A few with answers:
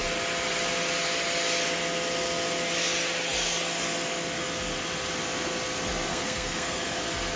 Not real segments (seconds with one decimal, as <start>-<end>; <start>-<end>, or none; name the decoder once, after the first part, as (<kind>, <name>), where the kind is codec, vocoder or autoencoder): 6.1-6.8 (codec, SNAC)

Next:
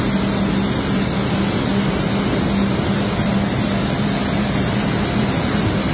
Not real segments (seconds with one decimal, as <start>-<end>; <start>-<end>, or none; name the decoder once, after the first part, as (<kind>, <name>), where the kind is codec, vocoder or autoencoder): none

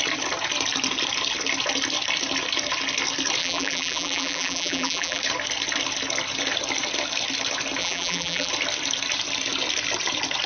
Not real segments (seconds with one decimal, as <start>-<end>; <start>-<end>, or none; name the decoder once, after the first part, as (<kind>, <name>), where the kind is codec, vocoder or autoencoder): 3.4-5.2 (vocoder, BigVGAN v2); 7.8-8.5

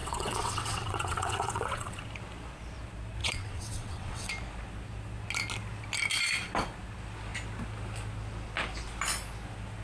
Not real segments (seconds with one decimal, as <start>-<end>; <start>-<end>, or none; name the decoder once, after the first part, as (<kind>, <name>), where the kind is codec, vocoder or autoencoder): 0.0-2.0 (vocoder, WaveNeXt); 3.2-4.3

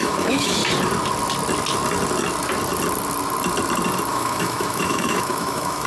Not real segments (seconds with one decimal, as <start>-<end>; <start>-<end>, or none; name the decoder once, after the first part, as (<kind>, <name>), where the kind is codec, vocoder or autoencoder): 0.0-0.6 (autoencoder, DAC-VAE); 4.1-5.9

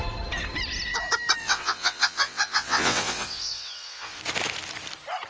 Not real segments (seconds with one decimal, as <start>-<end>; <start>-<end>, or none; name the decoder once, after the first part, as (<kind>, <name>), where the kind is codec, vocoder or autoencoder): 1.4-4.2 (vocoder, WaveNeXt)

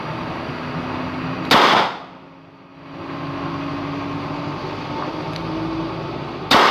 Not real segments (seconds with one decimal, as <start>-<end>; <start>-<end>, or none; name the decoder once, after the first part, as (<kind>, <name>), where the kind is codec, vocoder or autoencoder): 4.6-5.1 (vocoder, BigVGAN v2)